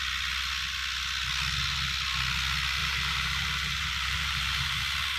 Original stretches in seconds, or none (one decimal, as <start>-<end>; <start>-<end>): 0.0-2.8; 4.8-5.2